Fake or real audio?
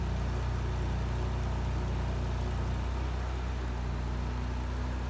real